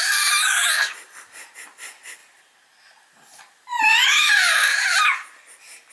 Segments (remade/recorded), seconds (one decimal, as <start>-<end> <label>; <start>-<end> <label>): 0.0-2.2 recorded; 2.2-5.9 remade